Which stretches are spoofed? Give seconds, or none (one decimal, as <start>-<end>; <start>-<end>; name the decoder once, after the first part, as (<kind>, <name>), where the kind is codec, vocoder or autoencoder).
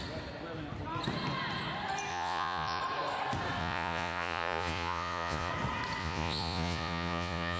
2.1-2.8 (vocoder, Vocos); 3.6-5.5; 6.0-7.6